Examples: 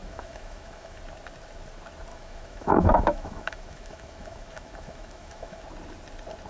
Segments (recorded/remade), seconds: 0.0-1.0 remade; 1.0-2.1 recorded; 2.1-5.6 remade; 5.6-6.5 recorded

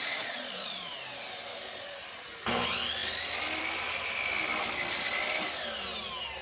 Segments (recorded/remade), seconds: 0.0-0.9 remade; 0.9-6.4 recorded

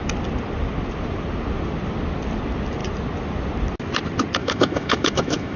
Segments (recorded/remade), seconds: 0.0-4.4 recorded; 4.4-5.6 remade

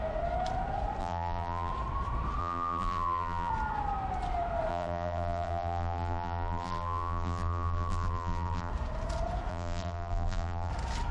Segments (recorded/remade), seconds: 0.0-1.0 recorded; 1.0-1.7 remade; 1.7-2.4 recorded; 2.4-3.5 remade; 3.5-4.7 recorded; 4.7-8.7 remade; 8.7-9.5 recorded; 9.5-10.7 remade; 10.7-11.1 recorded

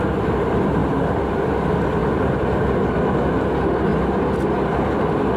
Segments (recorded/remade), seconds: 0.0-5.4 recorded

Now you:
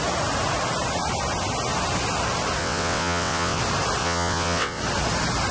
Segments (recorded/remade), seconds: 0.0-2.6 recorded; 2.6-3.6 remade; 3.6-4.0 recorded; 4.0-4.8 remade; 4.8-5.5 recorded

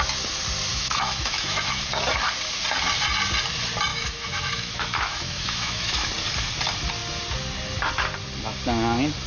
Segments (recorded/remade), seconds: 0.0-0.7 recorded; 0.7-1.8 remade; 1.8-3.9 recorded; 3.9-6.1 remade; 6.1-9.3 recorded